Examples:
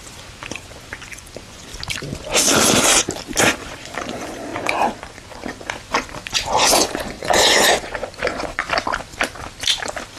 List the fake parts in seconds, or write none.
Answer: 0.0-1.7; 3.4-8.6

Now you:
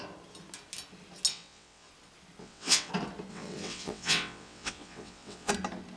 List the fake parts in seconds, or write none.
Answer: 1.3-1.9; 2.4-2.9; 3.3-5.5